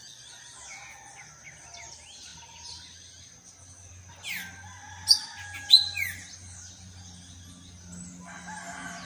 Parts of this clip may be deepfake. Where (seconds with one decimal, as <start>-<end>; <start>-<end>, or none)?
none